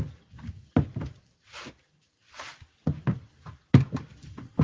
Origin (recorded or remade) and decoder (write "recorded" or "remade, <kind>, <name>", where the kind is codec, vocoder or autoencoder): recorded